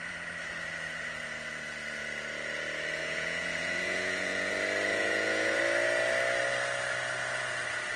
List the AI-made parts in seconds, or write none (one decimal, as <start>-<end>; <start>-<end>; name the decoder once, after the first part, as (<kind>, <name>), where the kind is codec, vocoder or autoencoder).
3.0-4.5 (vocoder, Vocos); 4.9-5.6